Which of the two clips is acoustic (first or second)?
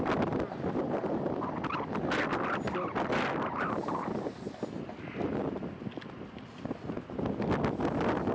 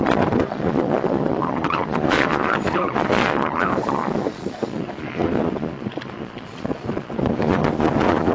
first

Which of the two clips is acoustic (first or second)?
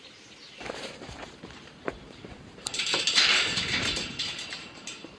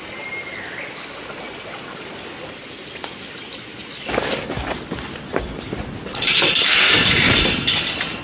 second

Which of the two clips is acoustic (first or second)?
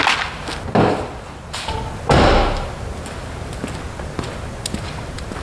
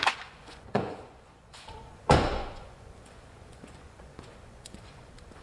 first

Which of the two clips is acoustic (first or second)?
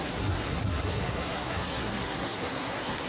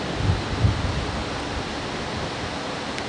second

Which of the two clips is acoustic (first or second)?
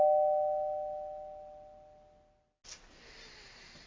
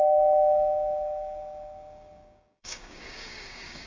first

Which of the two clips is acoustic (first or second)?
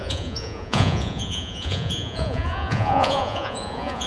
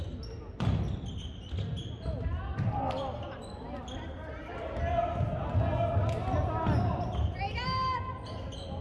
second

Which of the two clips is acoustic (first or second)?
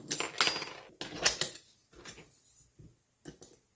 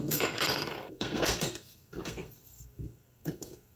first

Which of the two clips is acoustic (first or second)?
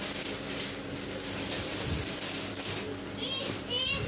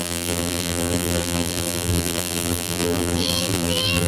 first